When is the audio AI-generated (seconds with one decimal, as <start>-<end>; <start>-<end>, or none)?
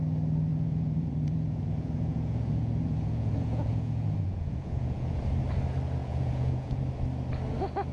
0.5-5.2; 6.0-6.8